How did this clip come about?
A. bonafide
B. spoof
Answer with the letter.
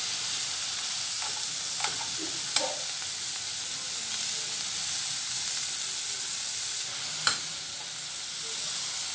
A